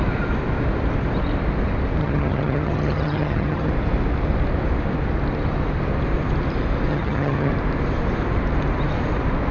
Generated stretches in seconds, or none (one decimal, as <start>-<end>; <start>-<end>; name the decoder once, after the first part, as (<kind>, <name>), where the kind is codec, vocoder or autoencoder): 2.0-3.7 (vocoder, HiFi-GAN); 6.9-7.5